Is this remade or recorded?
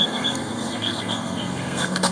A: remade